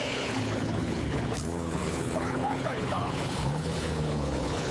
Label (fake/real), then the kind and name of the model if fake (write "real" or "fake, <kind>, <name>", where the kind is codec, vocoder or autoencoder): fake, codec, HILCodec